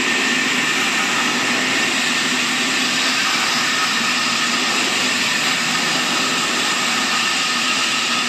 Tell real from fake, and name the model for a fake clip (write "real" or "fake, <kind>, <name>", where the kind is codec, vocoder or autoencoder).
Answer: real